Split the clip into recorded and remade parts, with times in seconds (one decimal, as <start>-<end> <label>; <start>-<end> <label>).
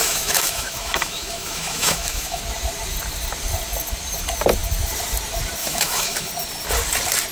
0.0-2.4 remade; 2.4-5.6 recorded; 5.6-6.3 remade; 6.3-7.3 recorded